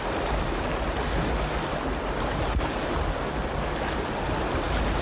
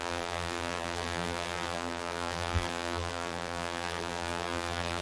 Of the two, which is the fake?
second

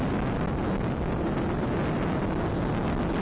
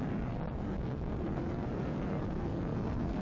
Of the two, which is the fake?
second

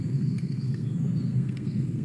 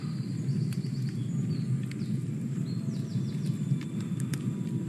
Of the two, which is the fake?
first